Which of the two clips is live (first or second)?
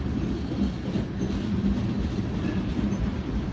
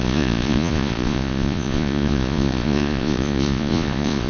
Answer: first